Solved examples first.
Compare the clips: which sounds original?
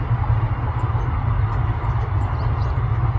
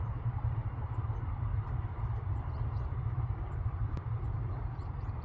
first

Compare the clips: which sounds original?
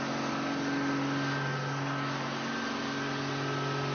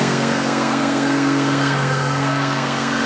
first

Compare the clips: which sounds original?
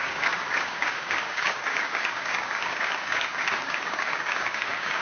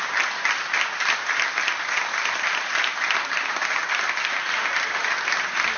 second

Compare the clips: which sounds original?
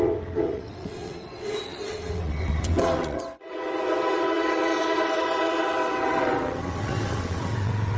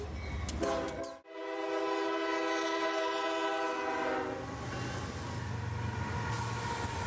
second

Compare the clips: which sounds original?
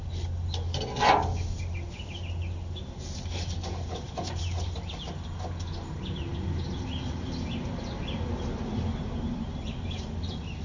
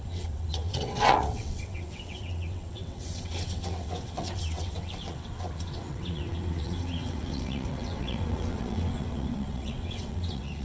first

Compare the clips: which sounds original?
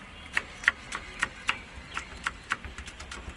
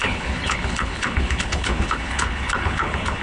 first